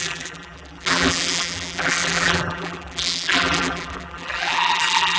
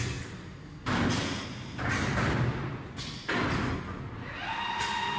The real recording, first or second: second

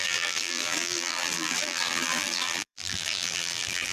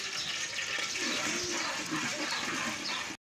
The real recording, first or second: second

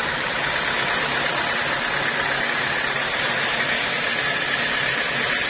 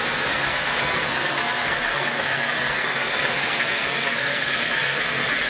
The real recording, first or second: first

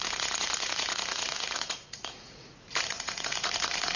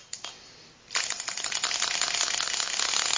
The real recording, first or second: second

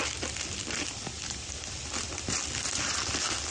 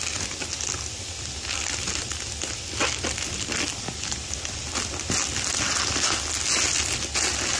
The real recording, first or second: second